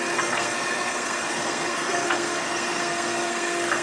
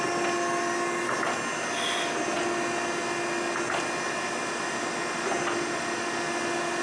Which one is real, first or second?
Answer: second